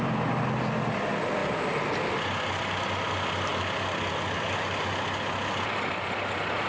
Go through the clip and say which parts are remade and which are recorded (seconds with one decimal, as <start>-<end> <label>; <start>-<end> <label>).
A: 0.0-6.7 recorded